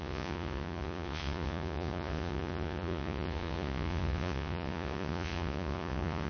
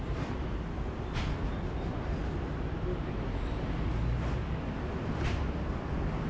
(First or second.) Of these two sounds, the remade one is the first